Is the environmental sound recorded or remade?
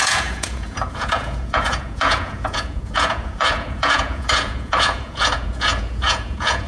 remade